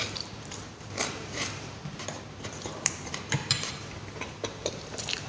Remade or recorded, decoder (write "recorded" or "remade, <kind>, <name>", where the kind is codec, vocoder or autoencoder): remade, vocoder, BigVGAN v2